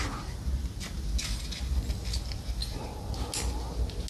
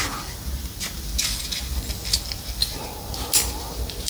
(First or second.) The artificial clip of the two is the second